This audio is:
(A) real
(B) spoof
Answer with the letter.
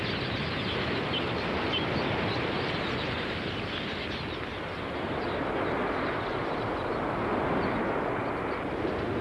A